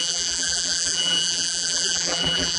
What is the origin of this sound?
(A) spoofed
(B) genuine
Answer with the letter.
A